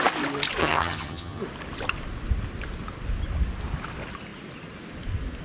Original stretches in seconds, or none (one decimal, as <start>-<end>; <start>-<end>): 0.0-0.6; 1.4-5.4